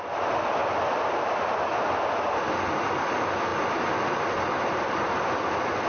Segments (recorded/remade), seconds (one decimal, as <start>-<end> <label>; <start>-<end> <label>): 0.0-3.5 recorded; 3.5-4.0 remade; 4.0-5.9 recorded